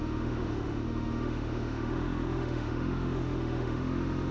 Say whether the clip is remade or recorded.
remade